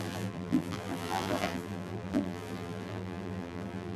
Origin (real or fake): fake